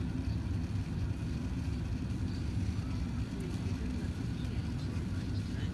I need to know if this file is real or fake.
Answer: real